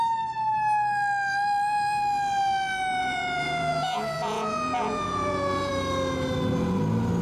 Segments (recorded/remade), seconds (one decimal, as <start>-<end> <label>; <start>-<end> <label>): 0.0-3.0 recorded; 3.0-5.7 remade; 5.7-7.2 recorded